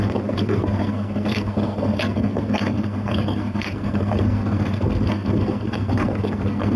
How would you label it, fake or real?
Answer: fake